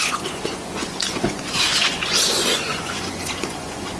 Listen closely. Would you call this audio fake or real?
fake